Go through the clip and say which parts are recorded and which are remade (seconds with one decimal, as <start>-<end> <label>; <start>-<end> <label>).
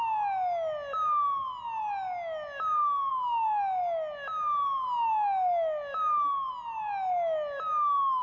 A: 0.0-8.2 recorded